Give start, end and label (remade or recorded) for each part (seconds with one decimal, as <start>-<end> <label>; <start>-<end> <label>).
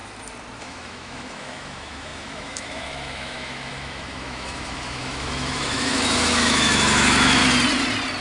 0.0-0.6 recorded; 0.6-7.4 remade; 7.4-8.2 recorded